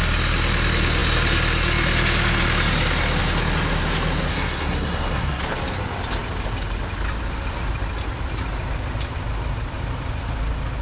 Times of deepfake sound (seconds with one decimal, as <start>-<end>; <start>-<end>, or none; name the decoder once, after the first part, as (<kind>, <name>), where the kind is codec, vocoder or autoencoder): 4.3-5.4 (codec, SNAC)